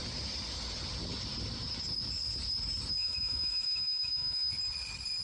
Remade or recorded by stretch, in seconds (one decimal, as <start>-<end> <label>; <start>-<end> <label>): 0.0-3.0 recorded; 3.0-4.5 remade; 4.5-5.2 recorded